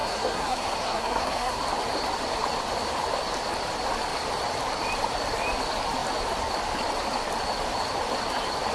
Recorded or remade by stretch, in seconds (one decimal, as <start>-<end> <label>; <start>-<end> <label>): 0.0-1.6 remade; 1.6-8.7 recorded